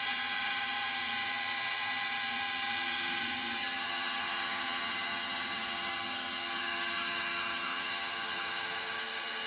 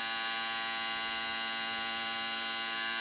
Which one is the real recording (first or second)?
second